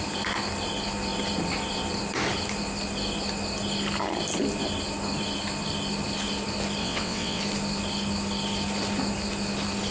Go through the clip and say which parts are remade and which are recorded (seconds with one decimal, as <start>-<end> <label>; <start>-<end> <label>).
0.0-6.8 recorded; 6.8-7.4 remade; 7.4-9.9 recorded